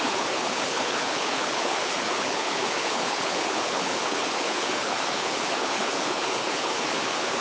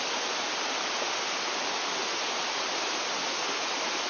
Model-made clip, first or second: first